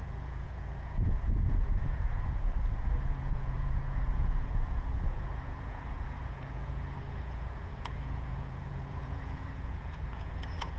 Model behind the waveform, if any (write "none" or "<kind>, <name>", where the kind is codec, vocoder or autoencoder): vocoder, Vocos